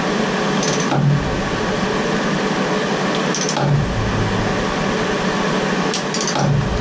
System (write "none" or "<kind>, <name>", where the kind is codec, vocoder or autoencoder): none